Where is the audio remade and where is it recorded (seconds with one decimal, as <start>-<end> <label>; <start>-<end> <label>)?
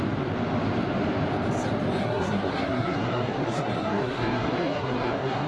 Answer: 0.0-2.0 recorded; 2.0-5.5 remade